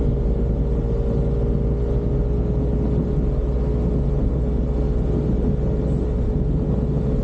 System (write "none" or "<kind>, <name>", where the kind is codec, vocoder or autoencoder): none